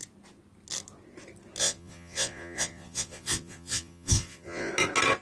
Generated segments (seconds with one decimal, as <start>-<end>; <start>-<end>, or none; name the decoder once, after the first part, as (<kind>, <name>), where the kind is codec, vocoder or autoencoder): 1.6-4.7 (vocoder, Vocos)